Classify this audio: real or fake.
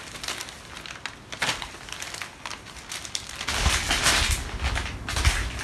real